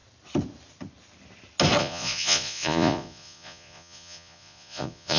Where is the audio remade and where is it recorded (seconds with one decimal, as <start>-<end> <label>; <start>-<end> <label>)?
0.0-1.8 recorded; 1.8-5.2 remade